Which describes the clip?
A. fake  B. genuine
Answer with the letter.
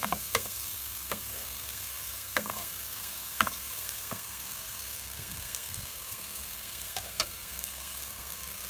A